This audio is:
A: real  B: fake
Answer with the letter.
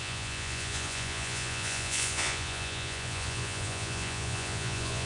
B